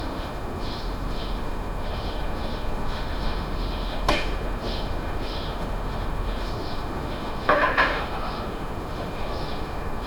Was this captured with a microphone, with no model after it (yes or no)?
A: no